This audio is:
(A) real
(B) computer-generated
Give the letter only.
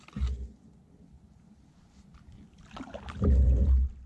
A